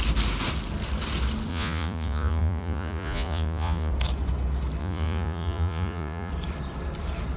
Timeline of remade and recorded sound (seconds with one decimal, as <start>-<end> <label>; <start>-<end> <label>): 0.0-1.5 recorded; 1.5-3.9 remade; 3.9-4.8 recorded; 4.8-6.3 remade; 6.3-7.4 recorded